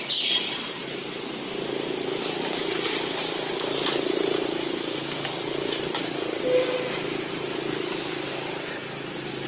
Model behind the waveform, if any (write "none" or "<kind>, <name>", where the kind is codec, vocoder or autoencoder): none